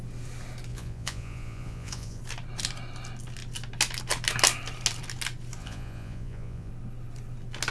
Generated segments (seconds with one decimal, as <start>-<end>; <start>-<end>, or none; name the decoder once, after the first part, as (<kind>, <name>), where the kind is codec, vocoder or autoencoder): 0.7-2.2 (vocoder, Vocos); 5.6-6.7